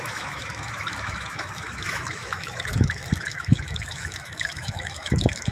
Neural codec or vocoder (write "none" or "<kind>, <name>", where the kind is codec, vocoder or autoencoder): autoencoder, DAC-VAE